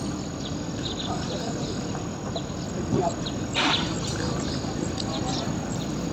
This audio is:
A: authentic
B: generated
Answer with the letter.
A